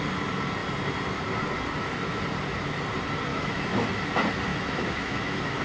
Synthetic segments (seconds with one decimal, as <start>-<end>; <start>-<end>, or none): 3.3-3.9; 4.5-5.6